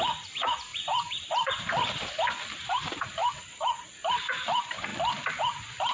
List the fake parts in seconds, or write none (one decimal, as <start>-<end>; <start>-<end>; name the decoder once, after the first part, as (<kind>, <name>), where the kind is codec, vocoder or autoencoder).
0.7-1.7 (vocoder, BigVGAN v2); 2.6-3.1